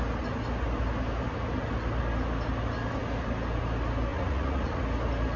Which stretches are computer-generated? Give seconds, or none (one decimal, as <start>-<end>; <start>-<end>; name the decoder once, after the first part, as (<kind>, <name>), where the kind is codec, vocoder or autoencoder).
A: 4.1-4.8 (vocoder, Vocos)